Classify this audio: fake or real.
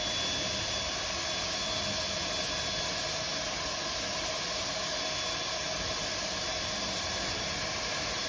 real